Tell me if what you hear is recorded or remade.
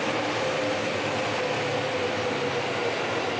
recorded